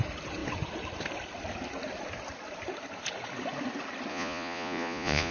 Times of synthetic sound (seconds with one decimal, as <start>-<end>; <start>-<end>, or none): 4.1-5.3